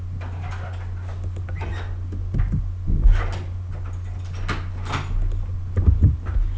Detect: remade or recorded recorded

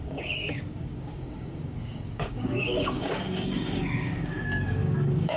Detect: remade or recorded remade